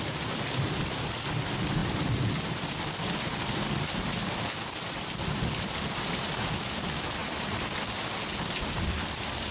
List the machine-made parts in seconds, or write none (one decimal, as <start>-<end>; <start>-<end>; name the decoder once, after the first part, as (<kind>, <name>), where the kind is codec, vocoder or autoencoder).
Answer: none